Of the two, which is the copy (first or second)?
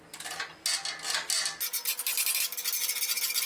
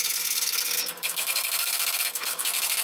second